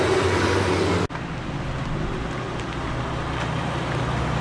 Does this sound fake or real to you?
real